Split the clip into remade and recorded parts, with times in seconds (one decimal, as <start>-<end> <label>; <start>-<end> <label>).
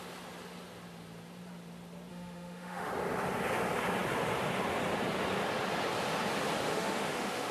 0.0-2.1 recorded; 2.1-2.9 remade; 2.9-6.7 recorded; 6.7-7.5 remade